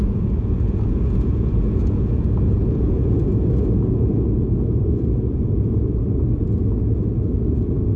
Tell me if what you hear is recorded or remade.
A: remade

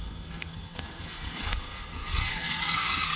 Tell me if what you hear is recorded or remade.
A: remade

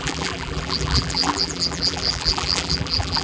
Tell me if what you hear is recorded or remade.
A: remade